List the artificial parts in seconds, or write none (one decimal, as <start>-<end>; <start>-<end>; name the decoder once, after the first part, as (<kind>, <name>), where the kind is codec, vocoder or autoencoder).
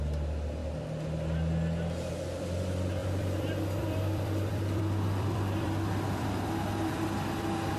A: 3.0-7.8 (vocoder, BigVGAN v2)